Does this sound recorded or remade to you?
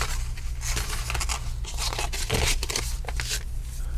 recorded